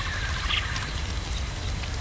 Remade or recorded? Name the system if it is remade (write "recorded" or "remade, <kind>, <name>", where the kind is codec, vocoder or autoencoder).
recorded